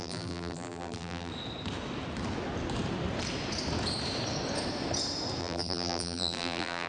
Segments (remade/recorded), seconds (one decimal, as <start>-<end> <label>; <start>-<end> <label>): 0.0-1.3 remade; 1.3-5.4 recorded; 5.4-6.9 remade